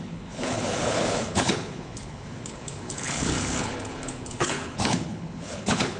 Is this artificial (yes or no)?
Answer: yes